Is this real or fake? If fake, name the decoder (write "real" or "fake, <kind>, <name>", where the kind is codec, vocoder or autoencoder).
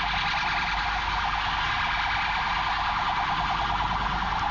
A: real